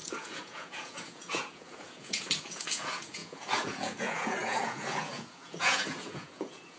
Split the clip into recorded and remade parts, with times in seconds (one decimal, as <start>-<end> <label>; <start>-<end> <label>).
0.0-6.8 remade